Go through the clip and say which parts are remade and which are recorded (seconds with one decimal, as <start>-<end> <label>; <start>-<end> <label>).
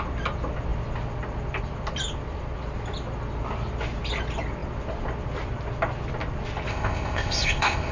0.0-6.7 recorded; 6.7-7.9 remade